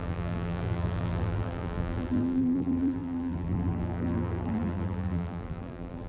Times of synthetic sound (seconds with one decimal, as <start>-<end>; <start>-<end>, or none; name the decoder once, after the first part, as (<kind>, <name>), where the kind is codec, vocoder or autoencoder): 0.0-6.1 (vocoder, BigVGAN v2)